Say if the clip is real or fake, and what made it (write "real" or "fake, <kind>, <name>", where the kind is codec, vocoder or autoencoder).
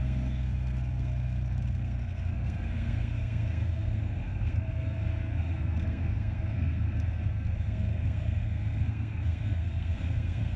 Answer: fake, codec, SNAC